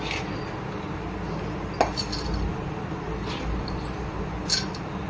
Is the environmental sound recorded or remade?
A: recorded